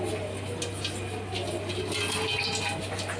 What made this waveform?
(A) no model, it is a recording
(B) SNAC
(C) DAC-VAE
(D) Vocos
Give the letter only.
A